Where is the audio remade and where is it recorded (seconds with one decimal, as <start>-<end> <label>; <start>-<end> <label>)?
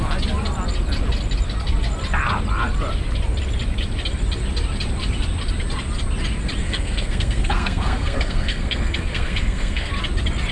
0.0-6.6 recorded; 6.6-9.9 remade; 9.9-10.5 recorded